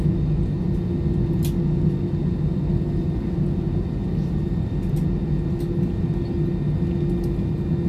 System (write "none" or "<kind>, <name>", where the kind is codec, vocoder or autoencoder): none